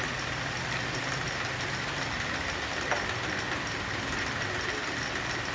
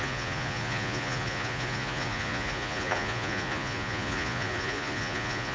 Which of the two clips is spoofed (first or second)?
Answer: second